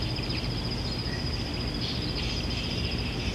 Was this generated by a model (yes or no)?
no